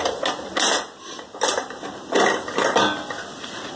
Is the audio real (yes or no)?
yes